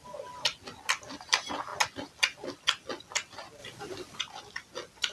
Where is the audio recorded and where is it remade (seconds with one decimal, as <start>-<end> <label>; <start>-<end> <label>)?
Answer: 0.0-3.6 recorded; 3.6-4.2 remade; 4.2-5.1 recorded